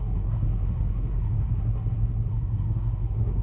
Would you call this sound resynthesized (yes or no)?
yes